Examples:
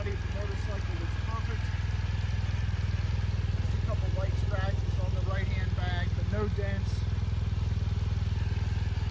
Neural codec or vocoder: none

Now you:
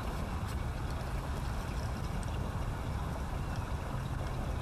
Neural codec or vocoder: none